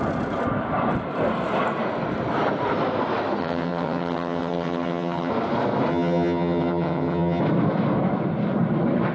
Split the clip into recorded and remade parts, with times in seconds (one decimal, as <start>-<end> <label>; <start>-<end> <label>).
0.0-3.4 recorded; 3.4-5.3 remade; 5.3-5.9 recorded; 5.9-7.4 remade; 7.4-9.1 recorded